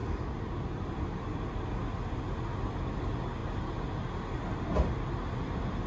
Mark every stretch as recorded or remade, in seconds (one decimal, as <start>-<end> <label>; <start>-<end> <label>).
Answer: 0.0-5.9 recorded